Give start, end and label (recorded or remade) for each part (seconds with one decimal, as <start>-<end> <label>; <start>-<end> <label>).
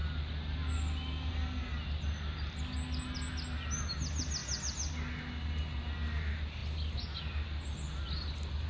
0.0-1.3 remade; 1.3-4.4 recorded; 4.4-5.8 remade; 5.8-6.6 recorded; 6.6-7.2 remade; 7.2-8.7 recorded